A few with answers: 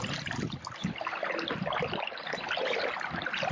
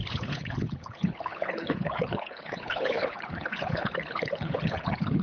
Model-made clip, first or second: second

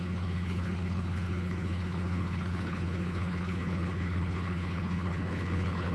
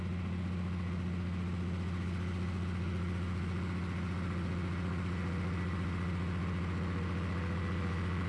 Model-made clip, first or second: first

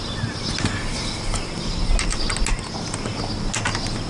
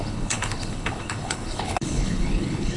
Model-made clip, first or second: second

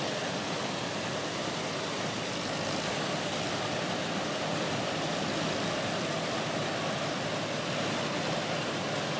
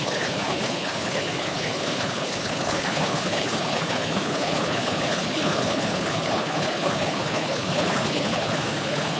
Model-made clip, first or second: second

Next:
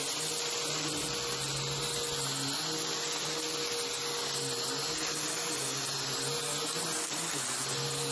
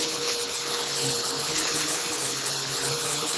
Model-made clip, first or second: second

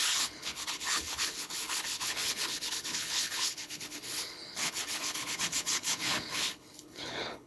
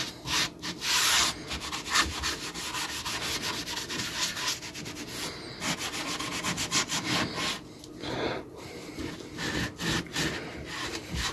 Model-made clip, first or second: first